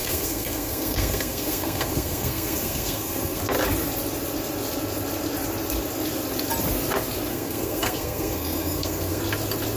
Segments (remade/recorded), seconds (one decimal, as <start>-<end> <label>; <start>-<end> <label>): 0.0-3.4 remade; 3.4-7.3 recorded; 7.3-9.2 remade; 9.2-9.8 recorded